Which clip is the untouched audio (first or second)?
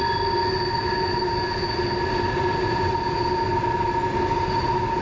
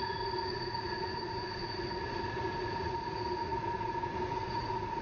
first